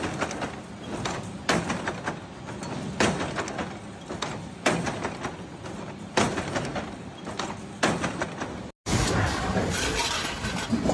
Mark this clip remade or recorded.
recorded